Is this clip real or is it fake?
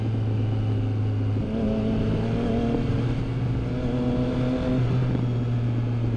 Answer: real